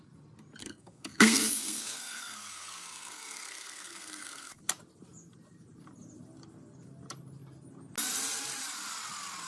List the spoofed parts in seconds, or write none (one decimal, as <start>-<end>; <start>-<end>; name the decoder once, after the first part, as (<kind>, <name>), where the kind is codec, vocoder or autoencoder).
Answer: 0.6-4.6 (codec, SNAC)

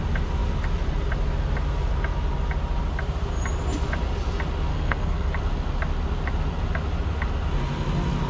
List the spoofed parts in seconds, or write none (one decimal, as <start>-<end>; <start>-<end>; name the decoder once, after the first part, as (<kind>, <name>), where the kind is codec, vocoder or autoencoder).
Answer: 4.7-5.3 (codec, SNAC)

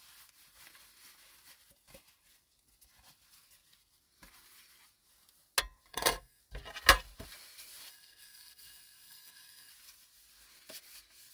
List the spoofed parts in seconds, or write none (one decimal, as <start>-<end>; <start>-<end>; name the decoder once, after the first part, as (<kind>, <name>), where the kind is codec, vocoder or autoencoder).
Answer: 5.9-6.4 (codec, SNAC); 7.9-9.7

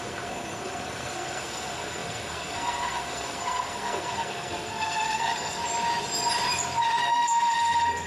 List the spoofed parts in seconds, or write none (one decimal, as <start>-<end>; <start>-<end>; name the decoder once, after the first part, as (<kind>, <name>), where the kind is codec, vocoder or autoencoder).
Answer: 0.0-5.6 (codec, SNAC); 7.0-8.1

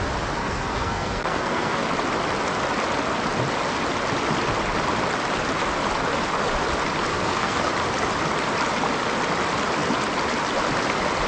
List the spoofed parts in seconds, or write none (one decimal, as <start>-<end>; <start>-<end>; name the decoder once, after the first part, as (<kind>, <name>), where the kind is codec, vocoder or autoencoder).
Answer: 0.4-1.9 (codec, SNAC); 7.1-7.7

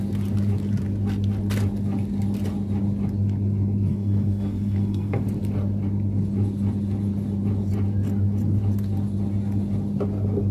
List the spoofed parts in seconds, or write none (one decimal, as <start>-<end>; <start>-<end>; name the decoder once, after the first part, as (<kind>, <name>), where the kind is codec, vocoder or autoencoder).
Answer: 3.9-5.2 (codec, SNAC)